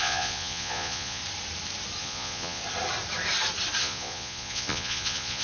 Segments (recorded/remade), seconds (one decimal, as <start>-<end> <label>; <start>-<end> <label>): 0.0-1.2 remade; 1.2-2.0 recorded; 2.0-2.6 remade; 2.6-3.8 recorded; 3.8-5.4 remade